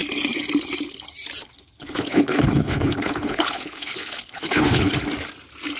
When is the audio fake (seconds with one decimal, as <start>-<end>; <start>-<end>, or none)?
1.4-4.9